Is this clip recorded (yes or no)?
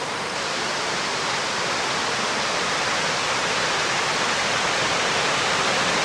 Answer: no